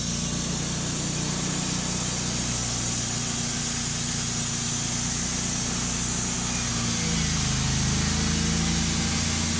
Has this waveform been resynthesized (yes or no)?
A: no